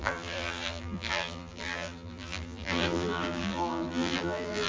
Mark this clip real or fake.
fake